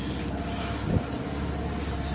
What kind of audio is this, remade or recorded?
recorded